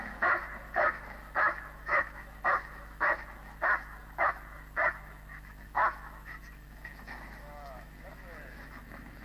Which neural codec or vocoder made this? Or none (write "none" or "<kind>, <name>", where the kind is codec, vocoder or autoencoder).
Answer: autoencoder, DAC-VAE